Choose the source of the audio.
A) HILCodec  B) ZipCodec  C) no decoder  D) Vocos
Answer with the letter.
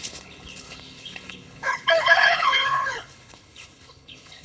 A